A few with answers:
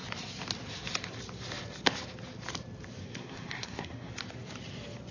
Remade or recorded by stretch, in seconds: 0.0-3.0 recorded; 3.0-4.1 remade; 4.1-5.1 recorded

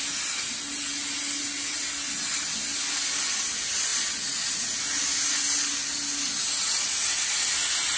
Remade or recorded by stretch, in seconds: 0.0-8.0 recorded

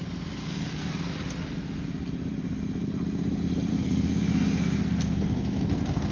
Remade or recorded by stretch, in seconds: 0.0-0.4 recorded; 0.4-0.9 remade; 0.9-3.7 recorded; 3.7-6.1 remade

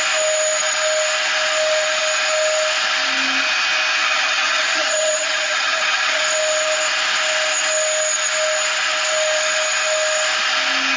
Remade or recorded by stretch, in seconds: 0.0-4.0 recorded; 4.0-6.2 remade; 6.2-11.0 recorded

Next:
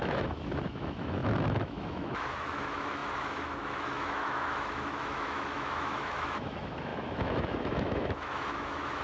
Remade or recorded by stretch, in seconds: 0.0-9.0 remade

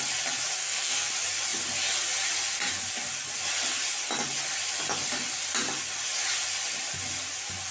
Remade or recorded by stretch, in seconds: 0.0-0.6 recorded; 0.6-1.1 remade; 1.1-7.7 recorded